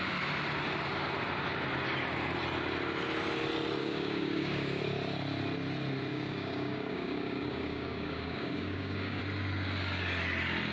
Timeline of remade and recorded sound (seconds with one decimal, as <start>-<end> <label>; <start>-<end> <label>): 0.0-3.8 recorded; 3.8-4.8 remade; 4.8-6.1 recorded; 6.1-9.2 remade; 9.2-10.7 recorded